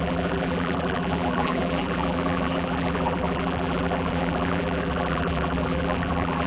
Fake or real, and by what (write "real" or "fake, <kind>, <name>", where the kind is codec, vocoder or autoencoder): fake, vocoder, BigVGAN v2